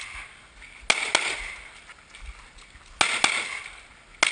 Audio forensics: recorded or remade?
recorded